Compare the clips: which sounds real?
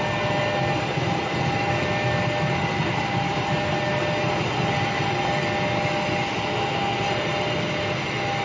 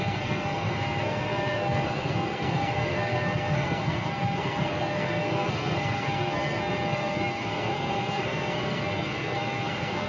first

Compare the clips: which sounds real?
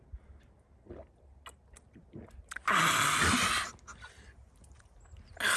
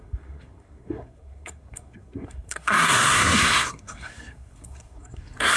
first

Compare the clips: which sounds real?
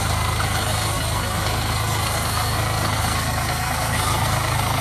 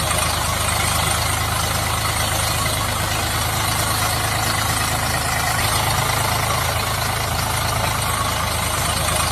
second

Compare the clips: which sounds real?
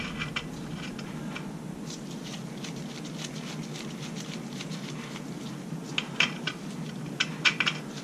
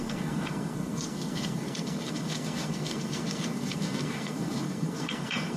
first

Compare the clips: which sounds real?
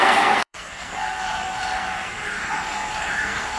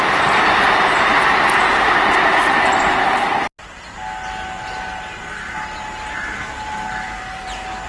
second